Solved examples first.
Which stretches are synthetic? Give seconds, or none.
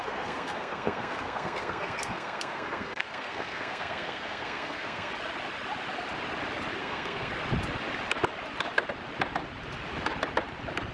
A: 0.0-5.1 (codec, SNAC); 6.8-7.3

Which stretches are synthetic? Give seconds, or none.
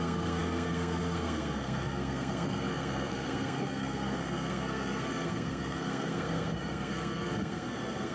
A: 0.0-8.1 (codec, SNAC)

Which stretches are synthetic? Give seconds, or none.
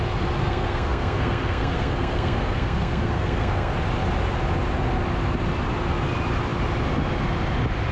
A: 0.4-3.7 (codec, SNAC)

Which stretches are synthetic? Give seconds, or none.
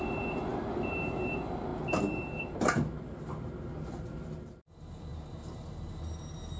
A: none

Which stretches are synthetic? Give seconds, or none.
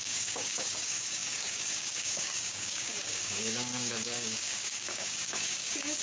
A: 0.0-6.0 (codec, DAC)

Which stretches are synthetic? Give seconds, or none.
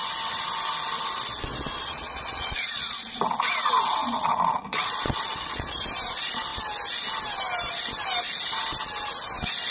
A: 1.3-3.2 (vocoder, Vocos); 4.0-5.8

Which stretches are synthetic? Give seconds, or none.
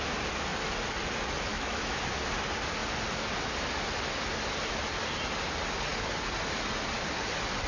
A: 1.5-2.0 (autoencoder, DAC-VAE)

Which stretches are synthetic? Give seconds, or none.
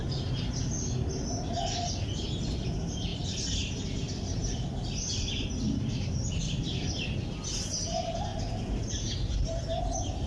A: 3.1-6.9 (vocoder, BigVGAN v2)